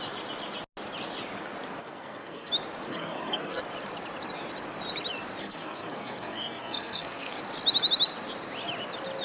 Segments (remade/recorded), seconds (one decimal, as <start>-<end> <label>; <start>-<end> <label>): 0.0-1.8 recorded; 1.8-2.5 remade; 2.5-2.9 recorded; 2.9-3.6 remade; 3.6-5.4 recorded; 5.4-7.4 remade; 7.4-9.2 recorded